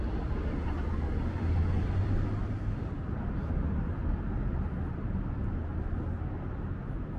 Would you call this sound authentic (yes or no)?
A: yes